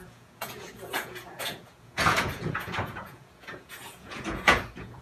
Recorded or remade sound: remade